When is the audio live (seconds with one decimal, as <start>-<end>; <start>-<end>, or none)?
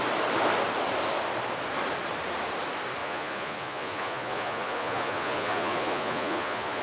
0.0-3.0